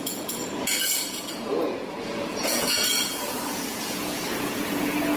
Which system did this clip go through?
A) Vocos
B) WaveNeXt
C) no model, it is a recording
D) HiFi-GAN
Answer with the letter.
A